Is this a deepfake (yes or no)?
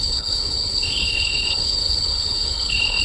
yes